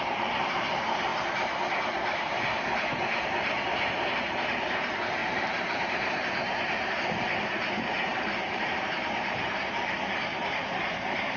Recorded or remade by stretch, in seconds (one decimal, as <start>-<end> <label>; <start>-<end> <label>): 0.0-1.1 remade; 1.1-4.2 recorded; 4.2-11.4 remade